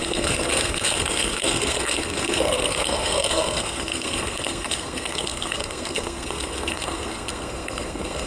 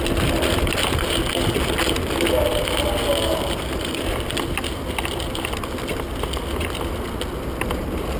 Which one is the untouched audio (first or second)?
second